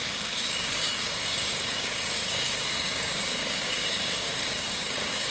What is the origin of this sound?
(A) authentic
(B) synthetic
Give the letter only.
B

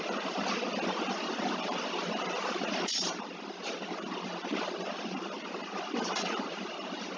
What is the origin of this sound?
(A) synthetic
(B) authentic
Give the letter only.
A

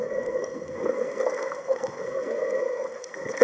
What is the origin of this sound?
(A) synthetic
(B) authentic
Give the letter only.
A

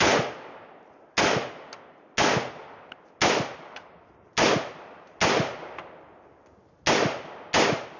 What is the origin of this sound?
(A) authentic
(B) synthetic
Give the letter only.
A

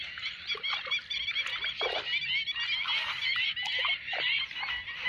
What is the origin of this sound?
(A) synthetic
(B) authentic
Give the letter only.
B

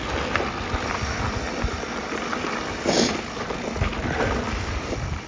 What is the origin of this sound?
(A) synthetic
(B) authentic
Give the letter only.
B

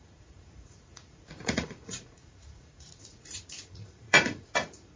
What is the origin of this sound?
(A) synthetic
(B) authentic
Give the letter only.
A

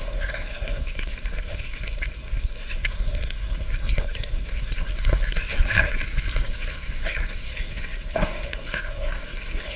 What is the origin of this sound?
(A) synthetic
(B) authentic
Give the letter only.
A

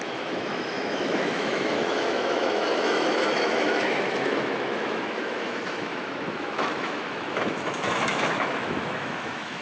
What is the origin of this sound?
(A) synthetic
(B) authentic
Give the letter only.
A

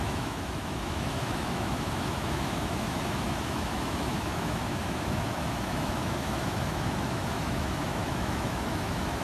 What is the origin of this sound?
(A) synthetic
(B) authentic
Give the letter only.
A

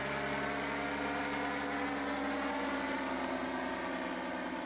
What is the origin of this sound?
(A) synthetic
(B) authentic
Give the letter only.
B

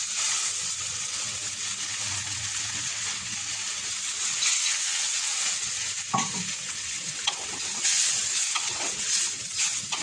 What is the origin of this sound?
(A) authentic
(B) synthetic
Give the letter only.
B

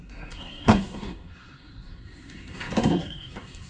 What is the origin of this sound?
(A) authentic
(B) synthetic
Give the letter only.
B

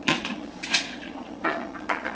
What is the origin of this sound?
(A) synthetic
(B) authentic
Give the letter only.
A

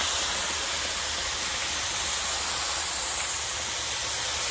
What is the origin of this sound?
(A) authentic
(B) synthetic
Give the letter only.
A